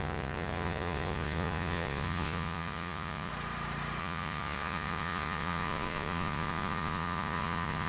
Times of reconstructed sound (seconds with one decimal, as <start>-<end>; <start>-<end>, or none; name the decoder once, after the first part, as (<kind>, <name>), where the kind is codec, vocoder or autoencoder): 0.0-3.3 (vocoder, Vocos); 4.0-7.9